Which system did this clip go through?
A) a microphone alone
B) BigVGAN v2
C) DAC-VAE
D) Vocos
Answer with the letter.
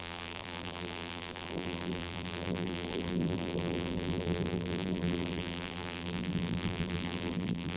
B